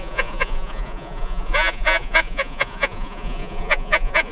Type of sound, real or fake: fake